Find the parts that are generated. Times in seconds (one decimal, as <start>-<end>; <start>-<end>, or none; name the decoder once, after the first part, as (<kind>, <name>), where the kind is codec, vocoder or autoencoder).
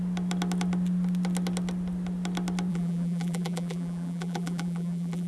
2.7-5.3 (vocoder, BigVGAN v2)